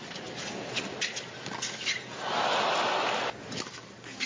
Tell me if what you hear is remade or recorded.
recorded